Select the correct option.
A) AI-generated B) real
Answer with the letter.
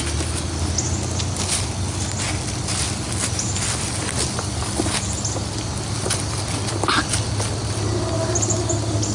B